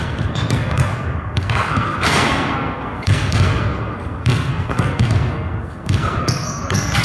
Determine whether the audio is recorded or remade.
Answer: remade